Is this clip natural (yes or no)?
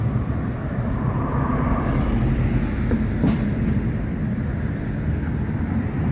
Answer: no